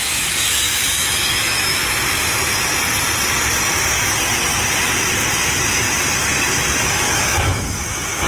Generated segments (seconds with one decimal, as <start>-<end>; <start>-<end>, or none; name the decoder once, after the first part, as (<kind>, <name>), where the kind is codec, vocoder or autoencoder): 0.0-1.8 (autoencoder, DAC-VAE); 6.8-8.3